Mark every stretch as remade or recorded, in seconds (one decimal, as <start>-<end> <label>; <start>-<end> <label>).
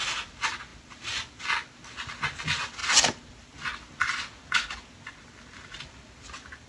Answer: 0.0-6.7 recorded